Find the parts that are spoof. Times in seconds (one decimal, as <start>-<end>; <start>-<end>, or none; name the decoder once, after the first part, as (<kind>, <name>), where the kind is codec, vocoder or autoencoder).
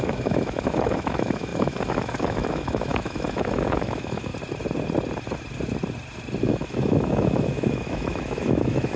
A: 0.0-4.3 (autoencoder, DAC-VAE); 6.4-9.0